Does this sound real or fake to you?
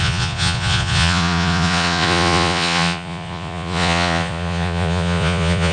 fake